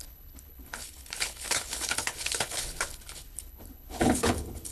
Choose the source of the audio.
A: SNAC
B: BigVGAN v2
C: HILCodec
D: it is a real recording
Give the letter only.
C